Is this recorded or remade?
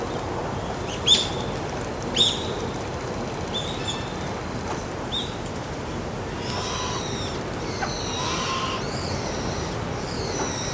recorded